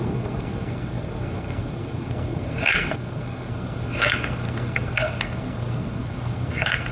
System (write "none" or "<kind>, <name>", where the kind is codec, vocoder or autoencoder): codec, SNAC